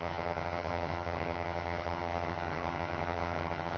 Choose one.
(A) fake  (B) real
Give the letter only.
A